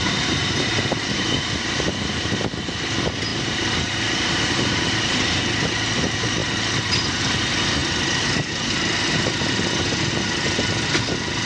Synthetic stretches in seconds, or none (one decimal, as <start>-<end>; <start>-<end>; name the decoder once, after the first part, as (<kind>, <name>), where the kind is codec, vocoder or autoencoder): 0.4-0.9 (vocoder, BigVGAN v2); 3.3-5.4